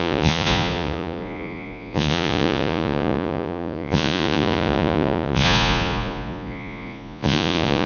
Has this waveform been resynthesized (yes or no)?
yes